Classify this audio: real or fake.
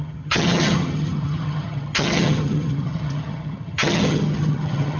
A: fake